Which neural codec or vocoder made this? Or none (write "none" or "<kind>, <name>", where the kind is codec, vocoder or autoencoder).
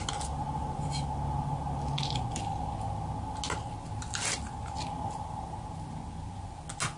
none